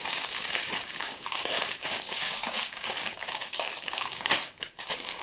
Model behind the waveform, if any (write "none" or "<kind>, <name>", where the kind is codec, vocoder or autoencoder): codec, DAC